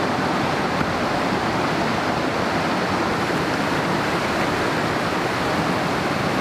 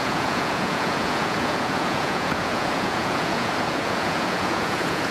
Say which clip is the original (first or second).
first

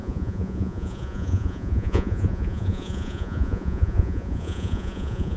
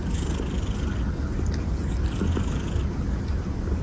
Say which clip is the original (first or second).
second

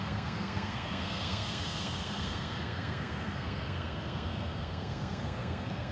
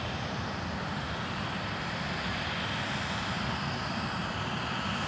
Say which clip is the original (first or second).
second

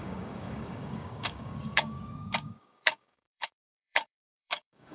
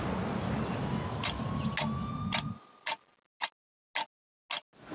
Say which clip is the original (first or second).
second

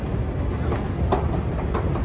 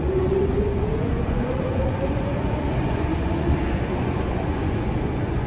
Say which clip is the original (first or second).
first